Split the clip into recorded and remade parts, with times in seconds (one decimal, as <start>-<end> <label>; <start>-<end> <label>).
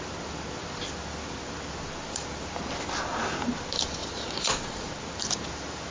0.0-4.0 recorded; 4.0-4.8 remade; 4.8-5.9 recorded